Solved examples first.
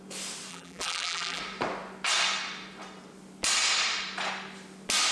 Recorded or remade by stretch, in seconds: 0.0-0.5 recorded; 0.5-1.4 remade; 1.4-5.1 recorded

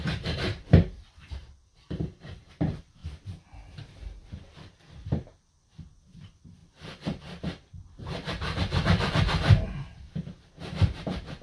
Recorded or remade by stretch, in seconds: 0.0-3.0 remade; 3.0-4.2 recorded; 4.2-11.4 remade

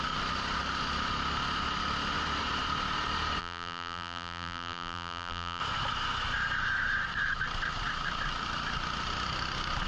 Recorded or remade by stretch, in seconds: 0.0-3.4 recorded; 3.4-5.6 remade; 5.6-9.9 recorded

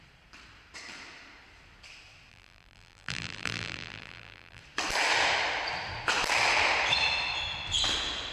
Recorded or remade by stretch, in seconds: 0.0-2.3 recorded; 2.3-4.6 remade; 4.6-8.3 recorded